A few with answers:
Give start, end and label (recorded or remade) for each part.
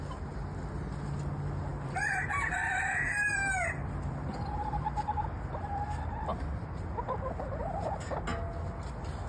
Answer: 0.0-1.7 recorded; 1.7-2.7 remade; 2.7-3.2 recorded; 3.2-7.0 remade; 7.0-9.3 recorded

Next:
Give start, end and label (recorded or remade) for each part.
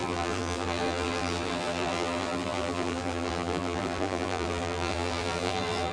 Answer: 0.0-5.9 remade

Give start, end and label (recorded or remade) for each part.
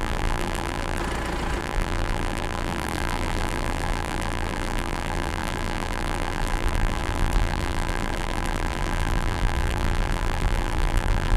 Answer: 0.0-1.0 remade; 1.0-1.6 recorded; 1.6-11.4 remade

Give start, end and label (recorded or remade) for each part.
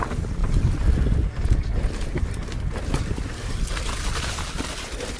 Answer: 0.0-3.3 recorded; 3.3-4.6 remade; 4.6-5.2 recorded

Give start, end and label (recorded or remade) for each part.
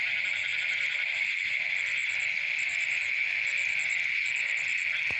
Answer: 0.0-5.2 recorded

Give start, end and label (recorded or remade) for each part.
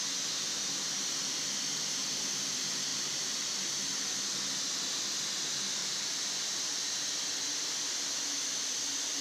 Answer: 0.0-2.9 recorded; 2.9-3.5 remade; 3.5-5.8 recorded; 5.8-7.2 remade; 7.2-9.2 recorded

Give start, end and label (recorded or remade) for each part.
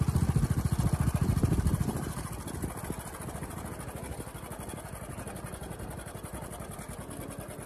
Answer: 0.0-1.3 recorded; 1.3-2.3 remade; 2.3-7.7 recorded